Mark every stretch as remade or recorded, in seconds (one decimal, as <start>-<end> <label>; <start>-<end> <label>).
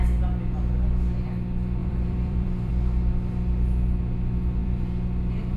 0.0-1.8 recorded; 1.8-2.7 remade; 2.7-4.6 recorded; 4.6-5.6 remade